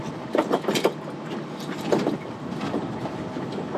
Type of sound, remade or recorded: recorded